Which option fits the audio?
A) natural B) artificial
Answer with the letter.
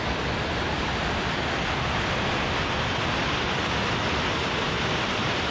A